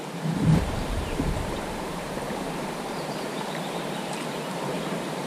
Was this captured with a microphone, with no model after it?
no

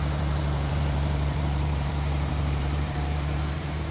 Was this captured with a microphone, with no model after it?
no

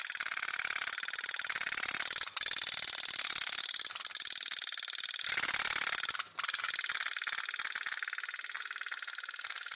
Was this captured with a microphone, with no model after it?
yes